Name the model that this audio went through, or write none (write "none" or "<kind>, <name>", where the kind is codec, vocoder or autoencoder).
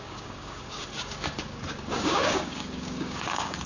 codec, DAC